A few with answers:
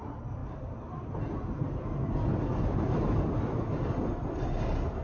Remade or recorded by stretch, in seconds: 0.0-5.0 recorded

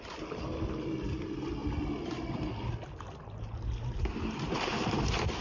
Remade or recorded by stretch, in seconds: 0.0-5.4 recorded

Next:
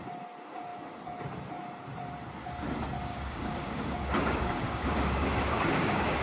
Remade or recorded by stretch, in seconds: 0.0-3.1 recorded; 3.1-6.2 remade

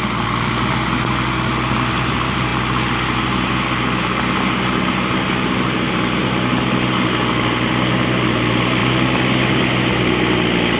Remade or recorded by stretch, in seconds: 0.0-10.8 recorded